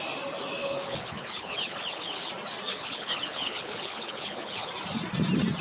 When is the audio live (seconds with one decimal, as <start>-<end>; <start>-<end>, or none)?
0.0-0.6; 2.3-2.7; 4.7-5.6